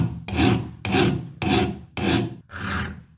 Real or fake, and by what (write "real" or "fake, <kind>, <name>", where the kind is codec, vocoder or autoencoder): real